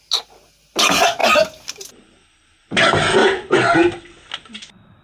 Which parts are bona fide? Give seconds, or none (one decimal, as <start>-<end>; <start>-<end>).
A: 0.0-3.2; 4.0-5.0